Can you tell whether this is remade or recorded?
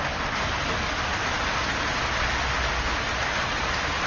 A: recorded